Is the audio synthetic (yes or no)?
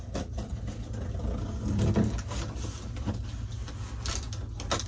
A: no